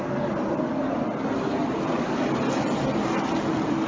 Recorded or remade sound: recorded